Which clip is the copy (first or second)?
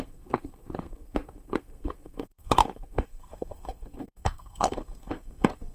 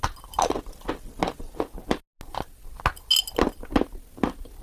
first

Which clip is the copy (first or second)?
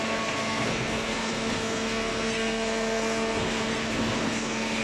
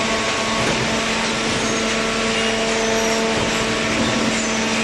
first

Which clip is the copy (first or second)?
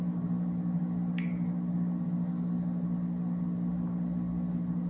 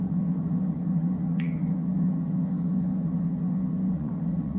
second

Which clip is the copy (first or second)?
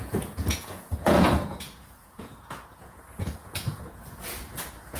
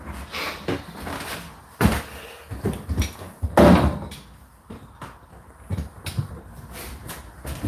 first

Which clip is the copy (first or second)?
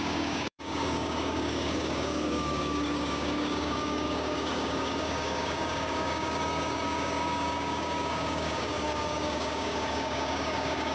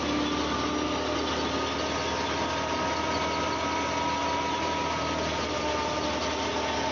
first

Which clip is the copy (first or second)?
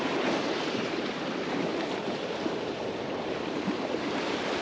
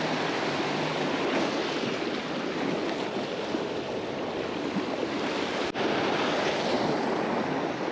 first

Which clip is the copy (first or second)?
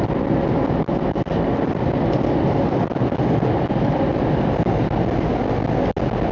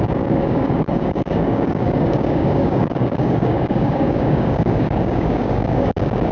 second